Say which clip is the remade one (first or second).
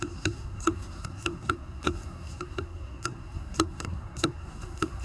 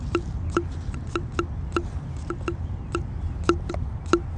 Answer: first